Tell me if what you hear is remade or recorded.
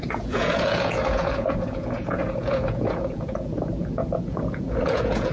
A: remade